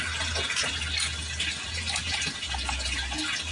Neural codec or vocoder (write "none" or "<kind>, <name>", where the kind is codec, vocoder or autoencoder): none